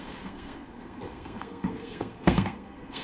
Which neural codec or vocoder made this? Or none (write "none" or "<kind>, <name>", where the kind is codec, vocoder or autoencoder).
codec, SNAC